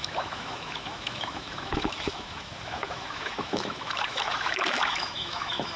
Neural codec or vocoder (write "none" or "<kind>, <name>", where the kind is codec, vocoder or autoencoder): autoencoder, DAC-VAE